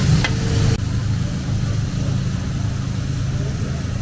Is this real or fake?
real